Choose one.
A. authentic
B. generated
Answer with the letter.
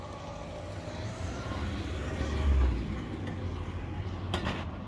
A